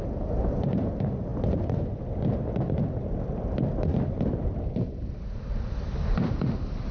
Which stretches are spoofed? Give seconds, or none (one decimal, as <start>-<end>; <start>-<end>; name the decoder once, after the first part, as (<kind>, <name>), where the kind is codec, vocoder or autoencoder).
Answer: none